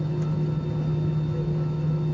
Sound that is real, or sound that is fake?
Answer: real